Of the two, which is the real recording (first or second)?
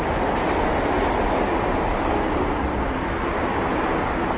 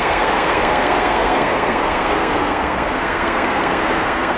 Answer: first